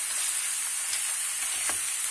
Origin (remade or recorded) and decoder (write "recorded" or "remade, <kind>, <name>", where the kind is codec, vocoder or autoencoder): recorded